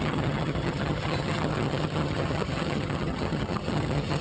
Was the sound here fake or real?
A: fake